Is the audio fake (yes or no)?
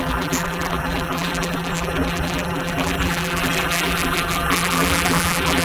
yes